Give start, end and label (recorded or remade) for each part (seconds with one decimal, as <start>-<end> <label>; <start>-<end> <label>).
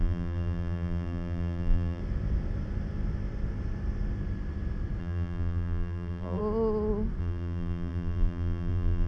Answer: 0.0-2.0 remade; 2.0-5.0 recorded; 5.0-6.4 remade; 6.4-7.2 recorded; 7.2-9.1 remade